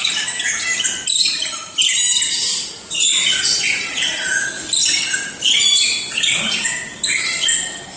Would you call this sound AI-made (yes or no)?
no